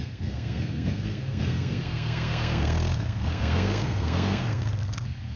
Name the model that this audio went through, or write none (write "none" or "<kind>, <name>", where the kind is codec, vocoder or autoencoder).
codec, SNAC